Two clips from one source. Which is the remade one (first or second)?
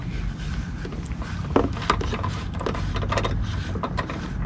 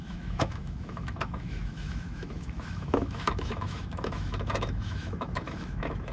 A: second